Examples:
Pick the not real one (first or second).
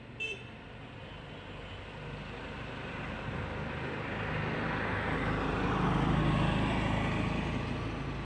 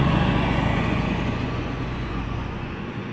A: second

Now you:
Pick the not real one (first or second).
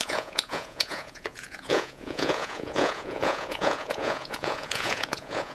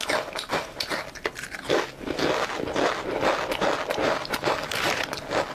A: first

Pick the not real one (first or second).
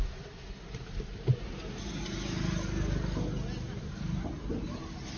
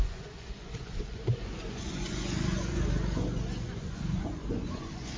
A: second